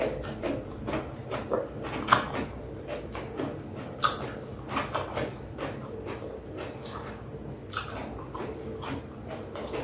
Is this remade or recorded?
recorded